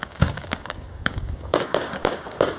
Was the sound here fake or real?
fake